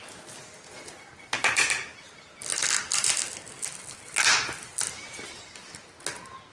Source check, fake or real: real